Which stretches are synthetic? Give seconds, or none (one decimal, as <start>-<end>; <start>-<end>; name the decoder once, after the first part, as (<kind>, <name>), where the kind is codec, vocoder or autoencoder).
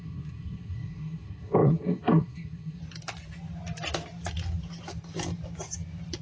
0.0-2.8 (codec, SNAC)